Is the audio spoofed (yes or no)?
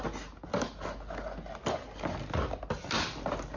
no